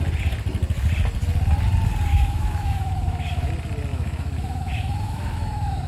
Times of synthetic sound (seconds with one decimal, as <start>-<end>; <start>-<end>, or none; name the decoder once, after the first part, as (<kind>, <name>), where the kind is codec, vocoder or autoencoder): 2.1-3.5 (autoencoder, DAC-VAE); 3.9-5.9